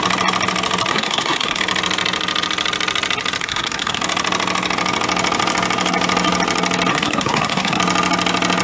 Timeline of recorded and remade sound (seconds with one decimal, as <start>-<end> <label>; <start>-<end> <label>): 0.0-0.9 recorded; 0.9-1.6 remade; 1.6-3.4 recorded; 3.4-4.0 remade; 4.0-6.9 recorded; 6.9-7.8 remade; 7.8-8.6 recorded